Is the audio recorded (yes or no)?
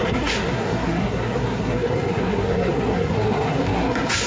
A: no